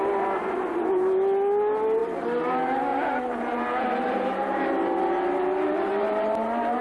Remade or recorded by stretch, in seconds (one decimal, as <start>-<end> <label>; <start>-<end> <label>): 0.0-2.0 recorded; 2.0-2.5 remade; 2.5-2.9 recorded; 2.9-6.8 remade